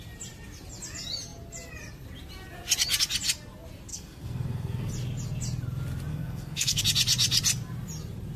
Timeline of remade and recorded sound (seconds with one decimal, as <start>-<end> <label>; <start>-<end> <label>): 0.0-3.9 recorded; 3.9-4.9 remade; 4.9-6.1 recorded; 6.1-6.8 remade; 6.8-8.4 recorded